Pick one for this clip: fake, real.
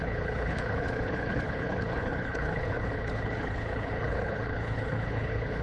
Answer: fake